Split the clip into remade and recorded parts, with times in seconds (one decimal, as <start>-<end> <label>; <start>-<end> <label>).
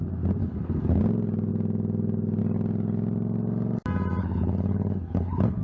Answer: 0.0-0.4 recorded; 0.4-1.0 remade; 1.0-4.2 recorded; 4.2-5.6 remade